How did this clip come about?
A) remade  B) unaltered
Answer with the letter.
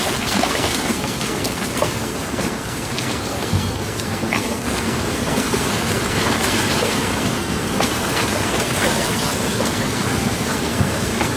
A